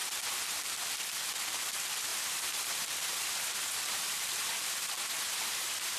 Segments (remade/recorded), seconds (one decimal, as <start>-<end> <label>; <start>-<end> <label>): 0.0-0.7 remade; 0.7-2.1 recorded; 2.1-6.0 remade